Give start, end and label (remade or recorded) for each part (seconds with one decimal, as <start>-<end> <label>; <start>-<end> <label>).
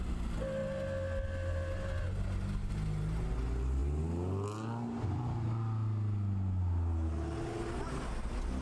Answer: 0.0-8.6 recorded